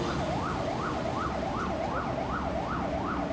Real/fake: real